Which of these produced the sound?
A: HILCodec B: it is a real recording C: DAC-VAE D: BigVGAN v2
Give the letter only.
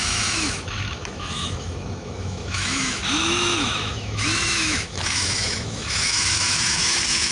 C